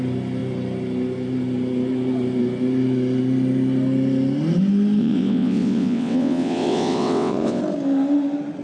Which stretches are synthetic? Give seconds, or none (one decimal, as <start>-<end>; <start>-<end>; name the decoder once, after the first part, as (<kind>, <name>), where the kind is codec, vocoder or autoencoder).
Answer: 5.0-7.6 (vocoder, WaveNeXt)